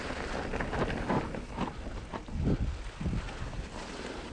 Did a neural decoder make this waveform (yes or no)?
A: no